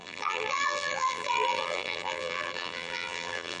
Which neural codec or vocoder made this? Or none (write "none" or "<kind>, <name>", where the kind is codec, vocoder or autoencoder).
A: vocoder, BigVGAN v2